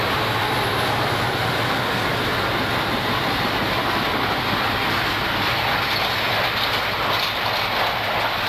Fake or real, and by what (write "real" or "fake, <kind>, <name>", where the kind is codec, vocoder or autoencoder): real